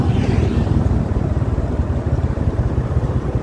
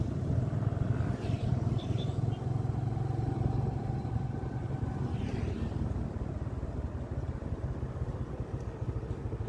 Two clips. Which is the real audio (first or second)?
second